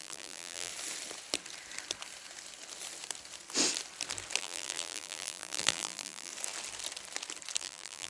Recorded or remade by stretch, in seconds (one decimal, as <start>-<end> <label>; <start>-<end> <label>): 0.0-0.7 remade; 0.7-4.4 recorded; 4.4-6.3 remade; 6.3-7.6 recorded; 7.6-8.1 remade